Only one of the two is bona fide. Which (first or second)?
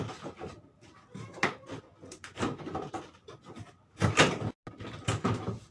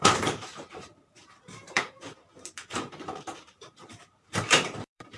first